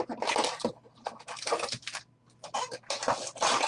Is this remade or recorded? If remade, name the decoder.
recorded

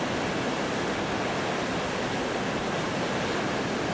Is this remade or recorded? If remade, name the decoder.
recorded